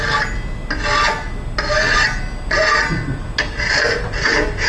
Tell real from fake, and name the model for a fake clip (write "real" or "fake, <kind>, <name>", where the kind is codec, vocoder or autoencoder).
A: real